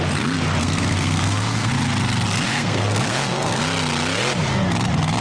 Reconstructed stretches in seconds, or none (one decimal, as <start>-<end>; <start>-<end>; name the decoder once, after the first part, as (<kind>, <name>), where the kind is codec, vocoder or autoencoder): 0.6-1.7 (codec, SNAC); 2.5-3.6